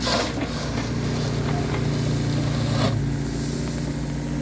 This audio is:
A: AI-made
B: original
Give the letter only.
B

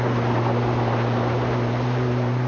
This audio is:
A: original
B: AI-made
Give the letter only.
A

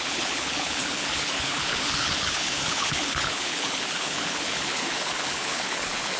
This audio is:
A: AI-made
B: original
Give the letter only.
A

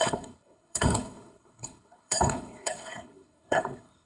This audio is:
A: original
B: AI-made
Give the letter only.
B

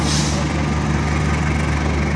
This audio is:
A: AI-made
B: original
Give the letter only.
B